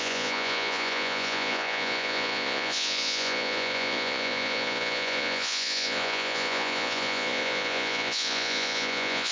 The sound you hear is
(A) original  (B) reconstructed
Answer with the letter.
B